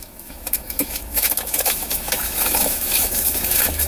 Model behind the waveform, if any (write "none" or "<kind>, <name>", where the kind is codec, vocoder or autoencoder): autoencoder, DAC-VAE